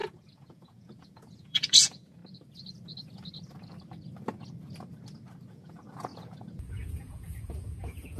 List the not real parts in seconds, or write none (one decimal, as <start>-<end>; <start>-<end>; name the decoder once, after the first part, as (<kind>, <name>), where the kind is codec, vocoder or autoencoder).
0.0-2.2 (vocoder, Vocos); 5.5-8.2